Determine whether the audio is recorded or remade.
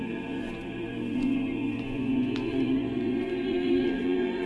remade